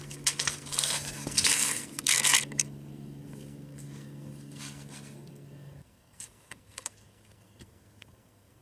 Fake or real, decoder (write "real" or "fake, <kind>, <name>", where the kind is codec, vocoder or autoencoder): fake, codec, SNAC